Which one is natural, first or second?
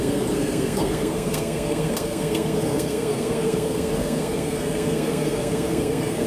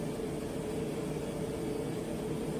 second